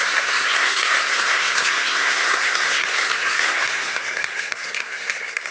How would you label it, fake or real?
fake